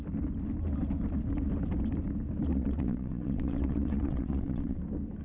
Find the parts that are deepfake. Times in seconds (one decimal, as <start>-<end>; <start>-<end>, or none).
2.5-4.8